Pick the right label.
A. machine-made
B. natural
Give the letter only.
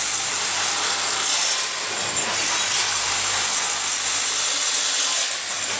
B